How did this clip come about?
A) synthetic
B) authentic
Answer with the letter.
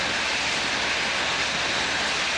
B